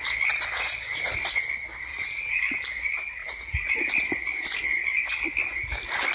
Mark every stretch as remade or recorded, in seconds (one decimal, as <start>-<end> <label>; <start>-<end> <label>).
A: 0.0-1.9 recorded; 1.9-2.4 remade; 2.4-3.2 recorded; 3.2-3.9 remade; 3.9-6.1 recorded